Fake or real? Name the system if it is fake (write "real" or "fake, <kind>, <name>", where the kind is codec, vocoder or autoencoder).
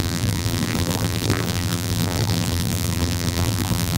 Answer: fake, vocoder, BigVGAN v2